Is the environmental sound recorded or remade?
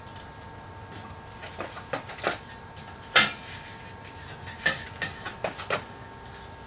recorded